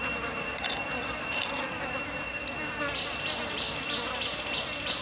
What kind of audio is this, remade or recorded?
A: recorded